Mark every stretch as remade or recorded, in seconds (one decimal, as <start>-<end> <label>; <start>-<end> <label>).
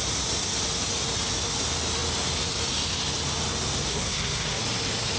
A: 0.0-3.9 recorded; 3.9-4.6 remade; 4.6-5.2 recorded